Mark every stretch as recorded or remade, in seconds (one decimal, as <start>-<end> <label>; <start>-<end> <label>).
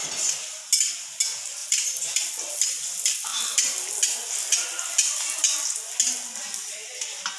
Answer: 0.0-1.6 recorded; 1.6-2.3 remade; 2.3-7.4 recorded